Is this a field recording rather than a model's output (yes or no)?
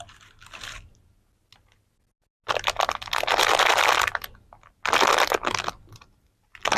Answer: yes